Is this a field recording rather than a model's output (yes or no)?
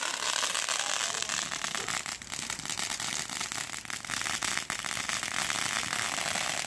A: yes